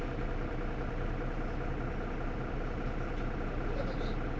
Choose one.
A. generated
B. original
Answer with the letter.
B